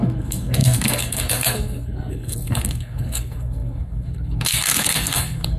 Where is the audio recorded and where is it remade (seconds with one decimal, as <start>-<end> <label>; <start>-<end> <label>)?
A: 0.0-5.6 remade